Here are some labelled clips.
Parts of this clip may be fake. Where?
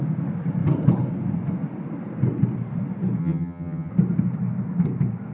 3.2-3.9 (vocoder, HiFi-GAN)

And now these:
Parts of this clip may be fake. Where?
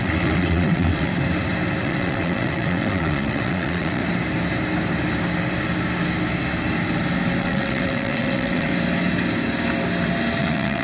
0.0-1.1 (vocoder, WaveNeXt); 1.8-4.0; 7.4-8.7; 10.4-10.8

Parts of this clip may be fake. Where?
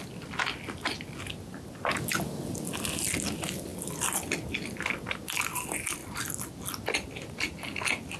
none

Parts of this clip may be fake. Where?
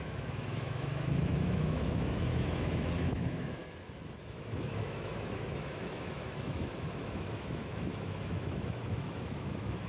0.0-3.6 (autoencoder, DAC-VAE); 4.2-9.9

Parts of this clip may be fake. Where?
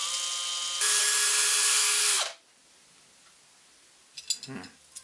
1.6-2.2 (codec, SNAC)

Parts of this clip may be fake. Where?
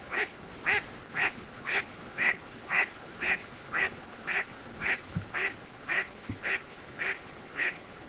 0.0-0.5 (codec, HILCodec); 1.0-8.1